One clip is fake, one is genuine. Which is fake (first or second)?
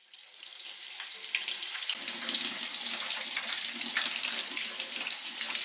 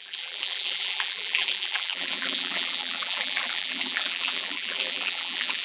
second